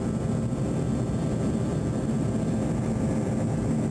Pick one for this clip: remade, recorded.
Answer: recorded